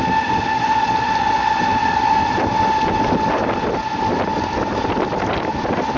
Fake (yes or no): no